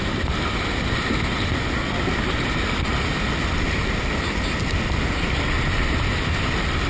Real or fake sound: real